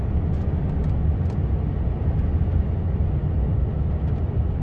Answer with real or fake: real